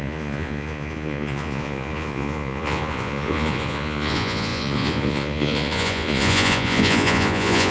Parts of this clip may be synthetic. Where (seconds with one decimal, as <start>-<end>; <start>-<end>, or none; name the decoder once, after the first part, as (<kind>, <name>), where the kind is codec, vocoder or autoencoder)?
0.0-7.7 (vocoder, Vocos)